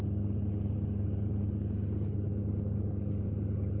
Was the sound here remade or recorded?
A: recorded